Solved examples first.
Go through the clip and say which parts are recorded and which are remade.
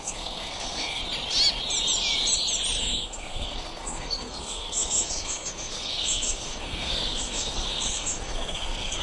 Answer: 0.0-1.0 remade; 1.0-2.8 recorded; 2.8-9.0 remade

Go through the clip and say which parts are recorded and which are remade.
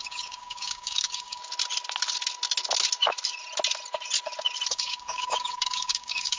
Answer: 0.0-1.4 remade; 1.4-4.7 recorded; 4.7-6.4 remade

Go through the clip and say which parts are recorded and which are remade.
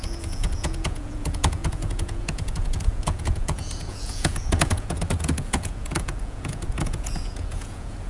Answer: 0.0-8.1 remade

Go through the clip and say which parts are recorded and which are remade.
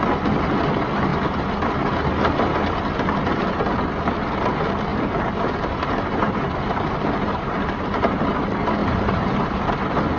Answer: 0.0-1.1 recorded; 1.1-2.7 remade; 2.7-4.9 recorded; 4.9-8.2 remade; 8.2-8.8 recorded; 8.8-9.6 remade; 9.6-10.2 recorded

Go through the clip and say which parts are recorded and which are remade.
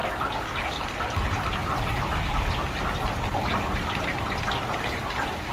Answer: 0.0-1.6 recorded; 1.6-4.4 remade; 4.4-5.5 recorded